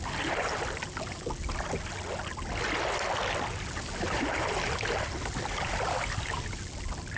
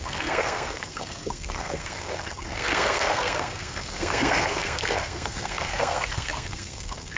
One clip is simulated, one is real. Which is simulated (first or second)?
second